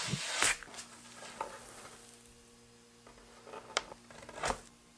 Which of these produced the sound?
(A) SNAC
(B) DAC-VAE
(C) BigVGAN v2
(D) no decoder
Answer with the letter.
D